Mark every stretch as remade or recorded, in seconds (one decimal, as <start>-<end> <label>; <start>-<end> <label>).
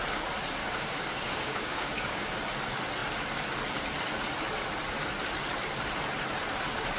0.0-0.6 recorded; 0.6-2.4 remade; 2.4-7.0 recorded